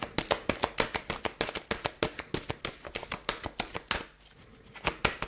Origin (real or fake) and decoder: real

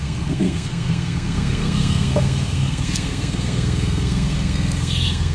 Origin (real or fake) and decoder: fake, codec, SNAC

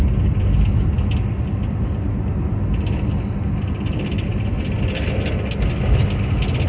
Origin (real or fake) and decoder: real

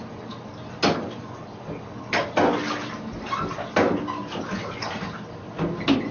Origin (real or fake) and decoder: real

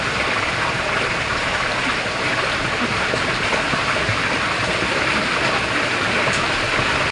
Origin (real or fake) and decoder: real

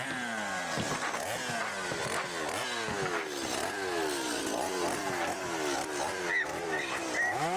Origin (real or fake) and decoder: real